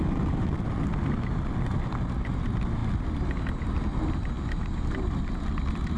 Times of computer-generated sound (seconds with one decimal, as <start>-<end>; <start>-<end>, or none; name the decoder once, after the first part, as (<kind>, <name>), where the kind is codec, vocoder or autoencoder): none